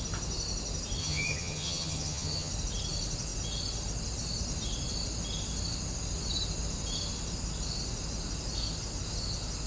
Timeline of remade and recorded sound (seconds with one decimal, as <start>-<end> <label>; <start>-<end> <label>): 0.0-1.0 recorded; 1.0-2.5 remade; 2.5-9.7 recorded